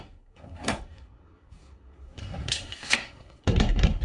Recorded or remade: remade